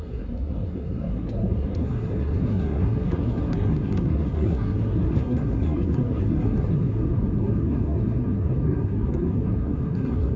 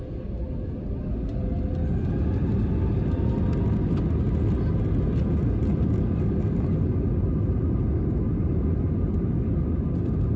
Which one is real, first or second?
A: second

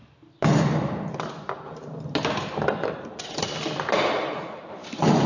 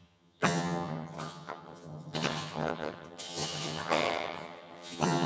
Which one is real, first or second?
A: first